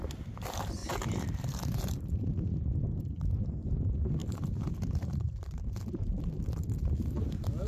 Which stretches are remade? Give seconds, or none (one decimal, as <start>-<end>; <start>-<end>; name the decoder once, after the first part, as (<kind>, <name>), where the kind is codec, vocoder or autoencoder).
0.8-2.2 (vocoder, BigVGAN v2); 4.2-6.4